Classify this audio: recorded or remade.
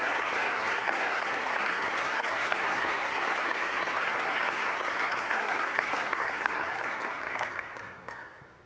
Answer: remade